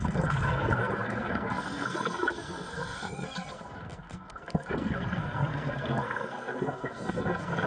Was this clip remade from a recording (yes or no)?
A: yes